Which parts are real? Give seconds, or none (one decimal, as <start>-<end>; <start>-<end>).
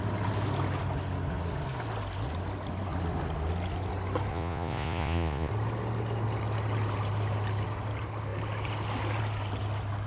0.0-4.3; 5.5-10.1